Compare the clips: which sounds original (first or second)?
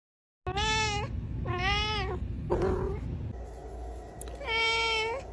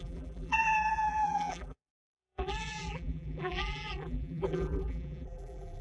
first